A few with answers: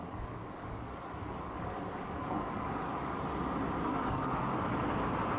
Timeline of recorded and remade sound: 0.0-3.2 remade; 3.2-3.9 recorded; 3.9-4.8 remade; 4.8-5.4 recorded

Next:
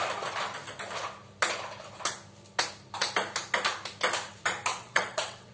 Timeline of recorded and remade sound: 0.0-4.7 recorded; 4.7-5.5 remade